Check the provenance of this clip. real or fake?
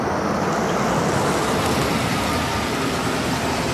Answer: real